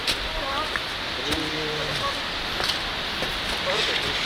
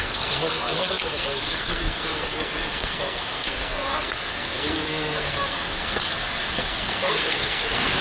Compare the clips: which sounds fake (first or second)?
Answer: second